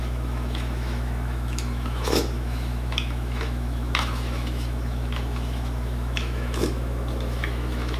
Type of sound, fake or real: fake